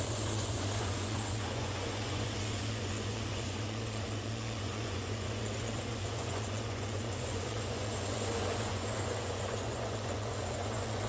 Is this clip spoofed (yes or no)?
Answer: yes